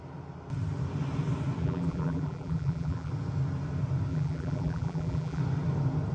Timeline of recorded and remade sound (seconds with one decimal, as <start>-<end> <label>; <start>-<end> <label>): 0.0-1.6 recorded; 1.6-3.1 remade; 3.1-4.1 recorded; 4.1-5.4 remade; 5.4-6.1 recorded